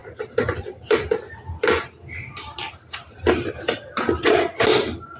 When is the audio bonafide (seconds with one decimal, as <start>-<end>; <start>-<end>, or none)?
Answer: 0.0-5.2